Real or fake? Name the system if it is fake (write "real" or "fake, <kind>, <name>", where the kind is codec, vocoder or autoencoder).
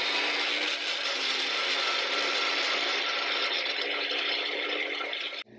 real